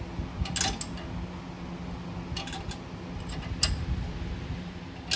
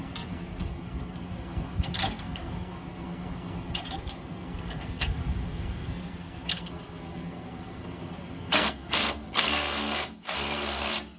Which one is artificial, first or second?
second